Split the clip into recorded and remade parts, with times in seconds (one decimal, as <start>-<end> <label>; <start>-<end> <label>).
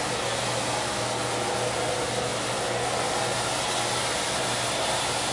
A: 0.0-5.3 recorded